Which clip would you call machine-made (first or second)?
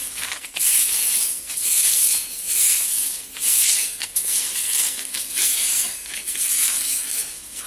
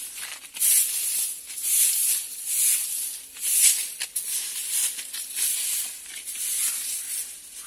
first